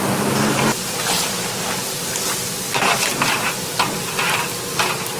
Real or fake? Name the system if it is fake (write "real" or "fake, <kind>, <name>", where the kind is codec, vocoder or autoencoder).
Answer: real